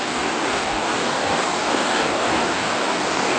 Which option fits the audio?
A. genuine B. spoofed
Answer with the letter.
B